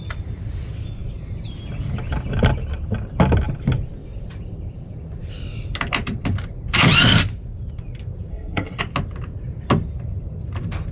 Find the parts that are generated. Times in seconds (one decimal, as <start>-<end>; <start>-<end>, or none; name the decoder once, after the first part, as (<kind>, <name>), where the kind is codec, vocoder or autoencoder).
8.3-8.8 (codec, SNAC)